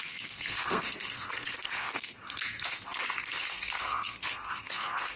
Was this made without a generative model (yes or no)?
no